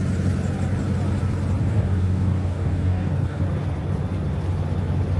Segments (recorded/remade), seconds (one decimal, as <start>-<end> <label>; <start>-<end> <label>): 0.0-1.6 recorded; 1.6-3.4 remade; 3.4-5.2 recorded